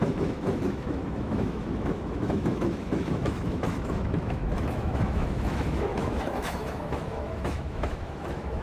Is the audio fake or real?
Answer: fake